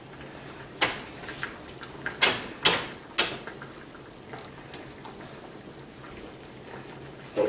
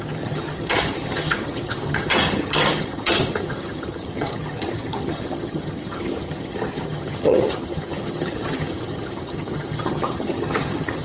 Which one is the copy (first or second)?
second